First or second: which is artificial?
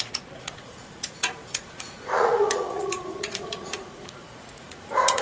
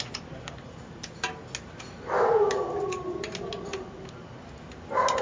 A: first